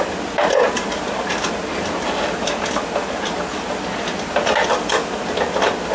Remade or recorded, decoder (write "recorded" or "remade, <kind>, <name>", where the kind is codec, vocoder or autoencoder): recorded